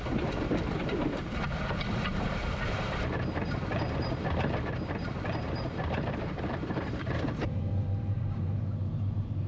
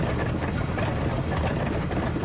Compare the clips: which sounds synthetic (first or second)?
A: first